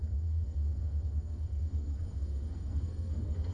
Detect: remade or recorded remade